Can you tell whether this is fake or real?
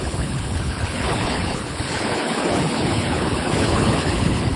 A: fake